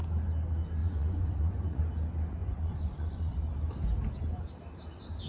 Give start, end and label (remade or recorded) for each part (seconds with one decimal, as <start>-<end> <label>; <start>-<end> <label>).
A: 0.0-0.8 recorded; 0.8-1.8 remade; 1.8-2.4 recorded; 2.4-3.3 remade; 3.3-5.3 recorded